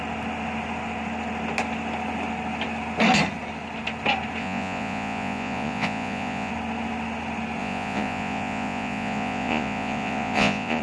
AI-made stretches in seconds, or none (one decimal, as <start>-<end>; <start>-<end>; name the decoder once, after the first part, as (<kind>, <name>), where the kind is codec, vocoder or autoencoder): 4.4-6.5 (vocoder, Vocos); 7.6-10.8